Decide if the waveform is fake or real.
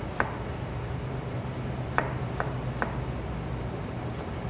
real